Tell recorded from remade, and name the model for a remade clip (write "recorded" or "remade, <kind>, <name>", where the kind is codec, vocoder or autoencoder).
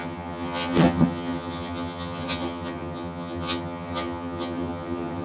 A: remade, vocoder, HiFi-GAN